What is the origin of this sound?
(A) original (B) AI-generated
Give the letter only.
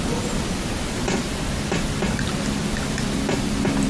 B